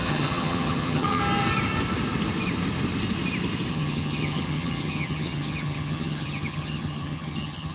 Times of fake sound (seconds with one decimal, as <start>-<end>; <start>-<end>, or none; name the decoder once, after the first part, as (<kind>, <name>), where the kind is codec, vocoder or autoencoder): 0.0-1.2 (vocoder, HiFi-GAN); 3.7-7.7